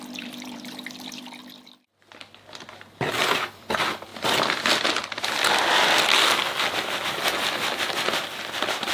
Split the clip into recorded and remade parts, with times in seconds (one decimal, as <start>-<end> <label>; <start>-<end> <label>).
0.0-1.4 remade; 1.4-3.1 recorded; 3.1-8.9 remade